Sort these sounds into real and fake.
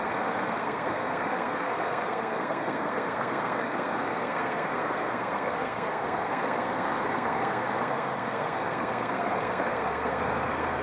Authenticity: fake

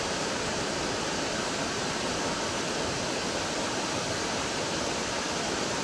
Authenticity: fake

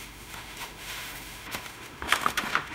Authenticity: fake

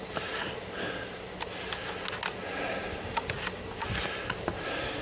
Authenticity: real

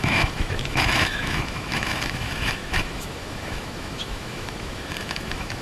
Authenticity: fake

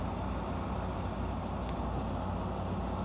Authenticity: real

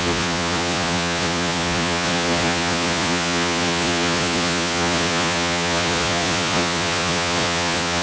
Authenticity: fake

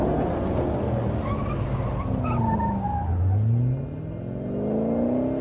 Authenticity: real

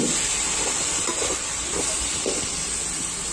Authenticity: real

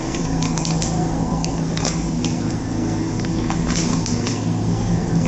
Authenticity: fake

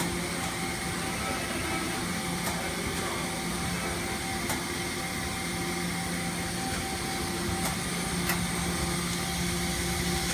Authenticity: real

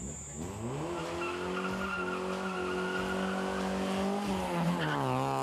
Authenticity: real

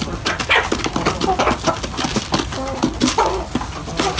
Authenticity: real